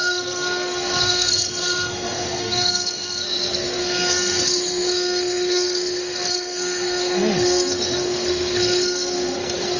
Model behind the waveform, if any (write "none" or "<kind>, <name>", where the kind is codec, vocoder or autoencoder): codec, SNAC